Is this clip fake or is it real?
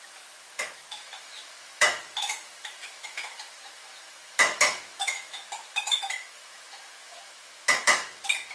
fake